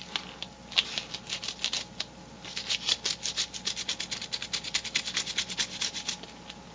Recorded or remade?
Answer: recorded